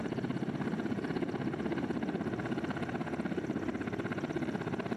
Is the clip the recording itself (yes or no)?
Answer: yes